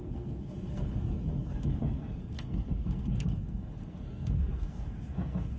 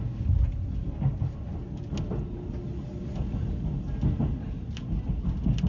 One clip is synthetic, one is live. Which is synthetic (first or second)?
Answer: first